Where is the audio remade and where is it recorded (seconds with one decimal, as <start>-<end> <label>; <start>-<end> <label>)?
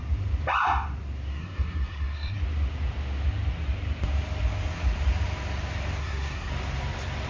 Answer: 0.0-1.3 recorded; 1.3-2.4 remade; 2.4-6.0 recorded; 6.0-6.5 remade; 6.5-7.3 recorded